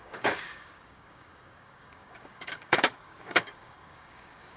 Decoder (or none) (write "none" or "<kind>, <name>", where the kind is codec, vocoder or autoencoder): codec, DAC